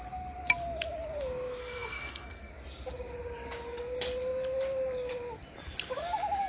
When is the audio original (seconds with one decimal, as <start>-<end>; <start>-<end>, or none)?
0.0-1.6; 2.5-6.5